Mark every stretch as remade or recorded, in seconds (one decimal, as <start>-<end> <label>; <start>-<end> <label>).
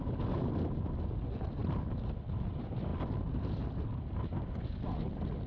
0.0-5.5 recorded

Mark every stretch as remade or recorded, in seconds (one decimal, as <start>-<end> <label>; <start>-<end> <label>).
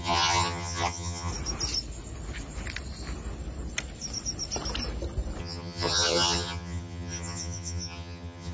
0.0-1.3 remade; 1.3-5.4 recorded; 5.4-8.5 remade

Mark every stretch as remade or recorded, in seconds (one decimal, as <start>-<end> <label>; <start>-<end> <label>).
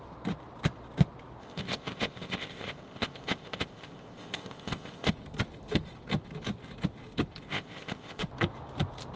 0.0-1.4 recorded; 1.4-5.1 remade; 5.1-7.5 recorded; 7.5-8.2 remade; 8.2-9.2 recorded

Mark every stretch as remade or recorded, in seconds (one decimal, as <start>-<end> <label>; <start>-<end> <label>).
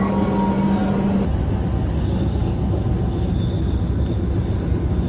0.0-5.1 recorded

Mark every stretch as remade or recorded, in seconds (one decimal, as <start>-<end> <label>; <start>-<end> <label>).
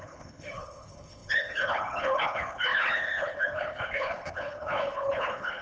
0.0-5.6 remade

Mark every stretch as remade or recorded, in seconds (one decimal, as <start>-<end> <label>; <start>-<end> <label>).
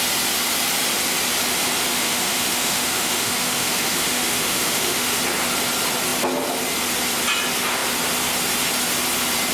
0.0-1.9 recorded; 1.9-5.2 remade; 5.2-9.5 recorded